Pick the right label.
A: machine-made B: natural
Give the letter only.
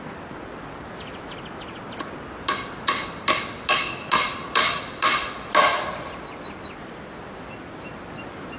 B